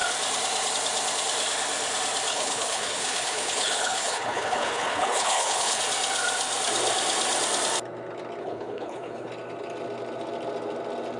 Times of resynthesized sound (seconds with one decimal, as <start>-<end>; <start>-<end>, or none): 2.3-5.8; 8.4-9.3